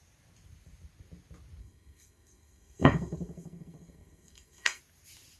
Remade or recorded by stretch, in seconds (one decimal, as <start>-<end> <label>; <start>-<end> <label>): 0.0-1.6 recorded; 1.6-4.8 remade; 4.8-5.4 recorded